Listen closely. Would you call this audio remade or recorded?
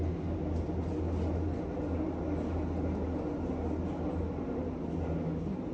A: recorded